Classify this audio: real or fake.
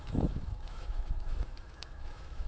fake